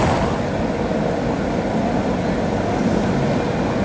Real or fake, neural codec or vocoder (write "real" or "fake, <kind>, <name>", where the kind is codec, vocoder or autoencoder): real